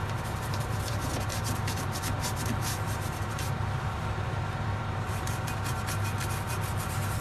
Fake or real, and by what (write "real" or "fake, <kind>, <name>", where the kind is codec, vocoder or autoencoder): fake, vocoder, BigVGAN v2